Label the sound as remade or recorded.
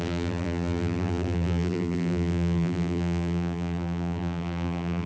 remade